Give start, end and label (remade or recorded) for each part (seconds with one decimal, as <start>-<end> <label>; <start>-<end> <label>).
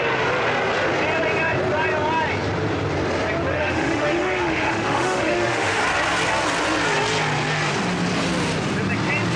0.0-3.5 recorded; 3.5-5.8 remade; 5.8-9.4 recorded